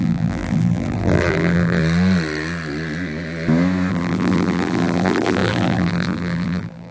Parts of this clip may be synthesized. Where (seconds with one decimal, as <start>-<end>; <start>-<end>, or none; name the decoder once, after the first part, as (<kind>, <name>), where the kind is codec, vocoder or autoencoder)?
0.0-1.8 (vocoder, BigVGAN v2); 3.9-6.9